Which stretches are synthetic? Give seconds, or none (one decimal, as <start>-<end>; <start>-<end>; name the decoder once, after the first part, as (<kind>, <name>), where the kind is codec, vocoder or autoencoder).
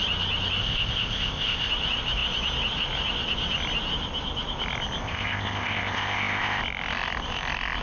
0.6-1.7 (codec, ZipCodec); 5.0-6.6